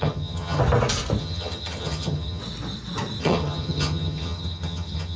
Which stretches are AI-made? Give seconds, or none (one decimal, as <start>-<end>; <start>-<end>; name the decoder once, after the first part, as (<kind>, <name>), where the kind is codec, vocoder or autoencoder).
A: 0.0-0.6 (vocoder, HiFi-GAN); 1.2-2.4; 3.2-5.2